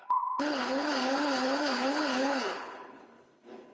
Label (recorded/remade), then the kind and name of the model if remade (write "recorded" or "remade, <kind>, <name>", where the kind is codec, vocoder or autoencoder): remade, codec, HILCodec